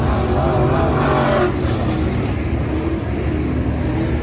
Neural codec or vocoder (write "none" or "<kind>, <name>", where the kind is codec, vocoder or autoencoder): none